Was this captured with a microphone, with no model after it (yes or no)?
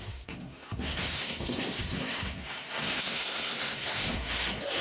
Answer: no